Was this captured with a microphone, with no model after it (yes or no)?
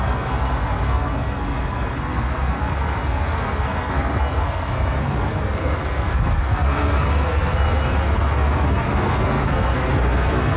no